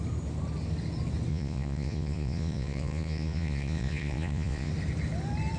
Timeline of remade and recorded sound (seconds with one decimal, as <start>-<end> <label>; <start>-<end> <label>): 0.0-1.3 recorded; 1.3-4.7 remade; 4.7-5.6 recorded